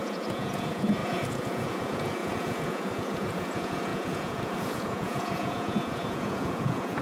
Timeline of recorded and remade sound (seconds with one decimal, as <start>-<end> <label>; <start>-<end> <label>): 0.0-7.0 remade